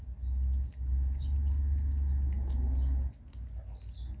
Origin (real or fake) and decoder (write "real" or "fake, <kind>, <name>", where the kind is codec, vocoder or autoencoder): real